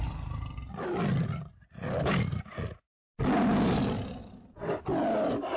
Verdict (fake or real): real